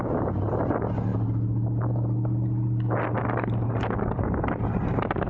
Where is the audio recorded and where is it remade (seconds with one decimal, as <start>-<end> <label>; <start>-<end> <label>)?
0.0-5.3 recorded